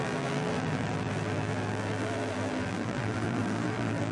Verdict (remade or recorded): remade